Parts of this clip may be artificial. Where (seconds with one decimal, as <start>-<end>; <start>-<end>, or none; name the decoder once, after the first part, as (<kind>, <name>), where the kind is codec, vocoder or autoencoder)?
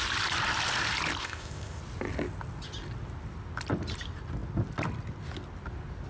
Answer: 1.2-1.8 (codec, ZipCodec)